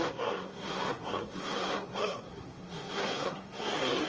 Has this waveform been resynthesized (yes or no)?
yes